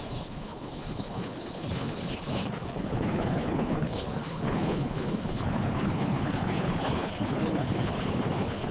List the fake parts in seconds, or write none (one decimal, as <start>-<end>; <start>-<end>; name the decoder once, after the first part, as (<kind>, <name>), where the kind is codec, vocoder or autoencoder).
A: 0.0-8.7 (codec, HILCodec)